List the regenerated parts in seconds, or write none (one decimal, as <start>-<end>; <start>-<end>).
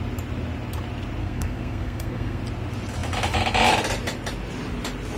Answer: 1.2-2.4